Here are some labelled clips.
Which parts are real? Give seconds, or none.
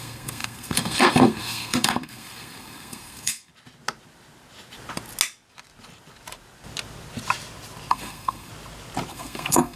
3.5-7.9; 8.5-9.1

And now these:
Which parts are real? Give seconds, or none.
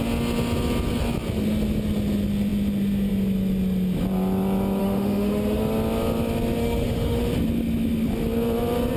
0.0-4.8; 5.6-6.6; 7.2-9.0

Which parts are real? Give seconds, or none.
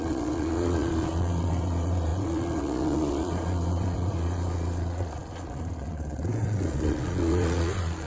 none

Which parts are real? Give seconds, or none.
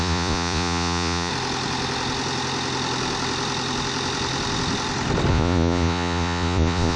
1.3-5.3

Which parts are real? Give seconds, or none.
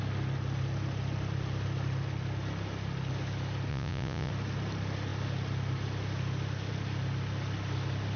0.0-3.7; 4.3-8.2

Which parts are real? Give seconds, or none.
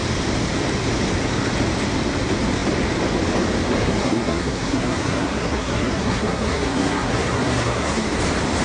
0.0-3.8; 8.2-8.6